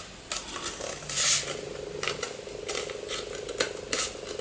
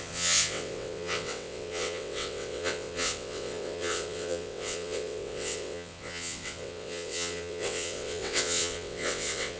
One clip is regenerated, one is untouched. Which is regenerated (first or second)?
second